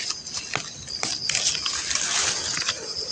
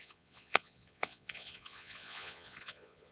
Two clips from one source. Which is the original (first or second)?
first